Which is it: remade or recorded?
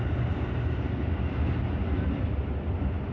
recorded